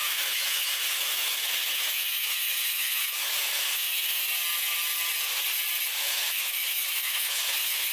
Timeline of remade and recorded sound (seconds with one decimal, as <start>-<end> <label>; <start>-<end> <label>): 0.0-4.3 remade; 4.3-6.0 recorded; 6.0-7.9 remade